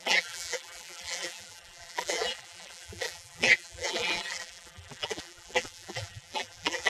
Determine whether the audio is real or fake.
fake